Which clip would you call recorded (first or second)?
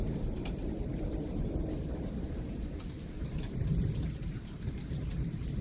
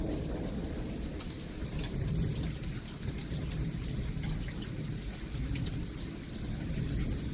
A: second